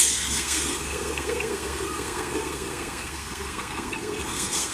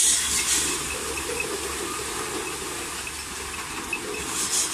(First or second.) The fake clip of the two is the first